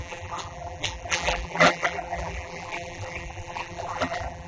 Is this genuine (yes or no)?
no